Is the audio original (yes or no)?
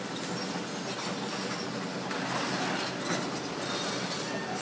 yes